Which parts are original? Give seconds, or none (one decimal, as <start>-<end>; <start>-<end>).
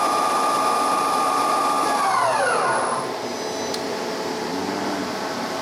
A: 1.6-4.8